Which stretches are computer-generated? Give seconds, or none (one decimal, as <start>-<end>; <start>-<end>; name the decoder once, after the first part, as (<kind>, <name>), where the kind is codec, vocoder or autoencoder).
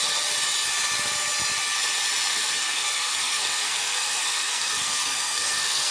2.3-5.9 (codec, SNAC)